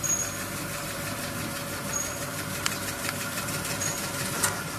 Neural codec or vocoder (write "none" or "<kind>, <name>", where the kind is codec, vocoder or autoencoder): vocoder, BigVGAN v2